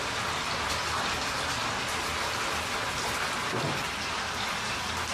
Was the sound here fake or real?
real